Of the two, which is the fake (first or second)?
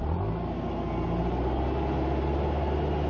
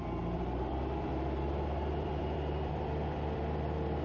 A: second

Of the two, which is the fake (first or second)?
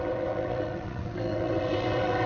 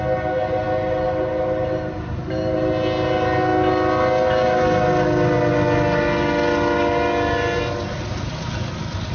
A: first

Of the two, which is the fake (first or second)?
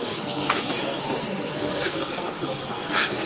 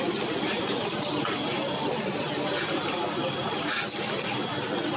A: first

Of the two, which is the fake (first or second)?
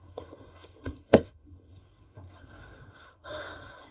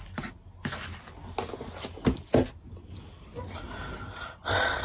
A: first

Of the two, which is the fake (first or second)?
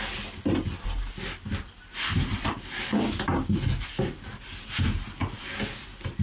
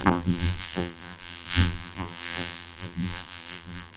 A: second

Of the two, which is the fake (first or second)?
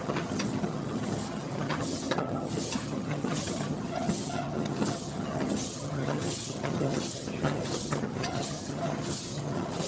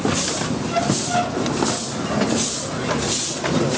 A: first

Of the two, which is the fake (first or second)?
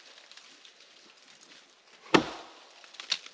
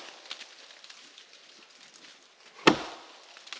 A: first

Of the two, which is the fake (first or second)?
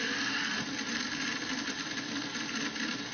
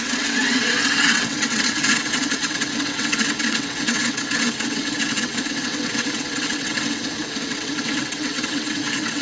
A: second